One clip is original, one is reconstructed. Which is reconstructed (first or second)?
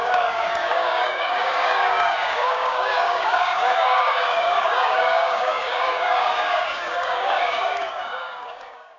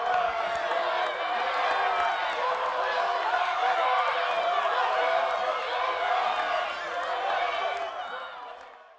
first